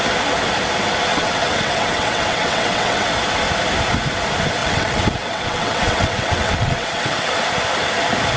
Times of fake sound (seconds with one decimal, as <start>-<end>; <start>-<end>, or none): 1.1-3.1; 4.6-7.3

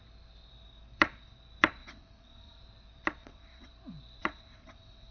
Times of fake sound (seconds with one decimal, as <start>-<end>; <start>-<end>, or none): 1.8-2.6; 3.2-3.7; 4.2-5.1